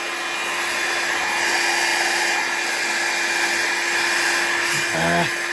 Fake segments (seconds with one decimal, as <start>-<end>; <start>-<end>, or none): none